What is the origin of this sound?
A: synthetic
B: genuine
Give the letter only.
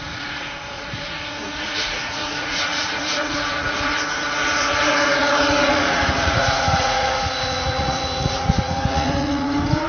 A